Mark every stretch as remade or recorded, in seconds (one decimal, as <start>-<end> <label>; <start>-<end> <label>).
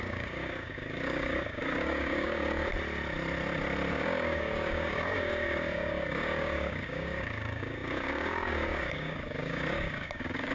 0.0-2.7 remade; 2.7-3.9 recorded; 3.9-10.5 remade